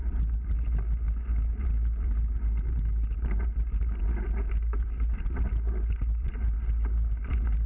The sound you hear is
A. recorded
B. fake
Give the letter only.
A